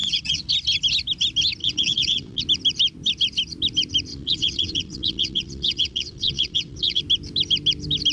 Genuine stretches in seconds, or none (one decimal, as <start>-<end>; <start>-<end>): 0.5-1.6; 2.4-4.1; 7.0-8.1